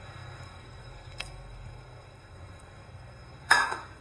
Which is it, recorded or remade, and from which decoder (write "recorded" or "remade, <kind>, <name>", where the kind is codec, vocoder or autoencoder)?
remade, codec, SNAC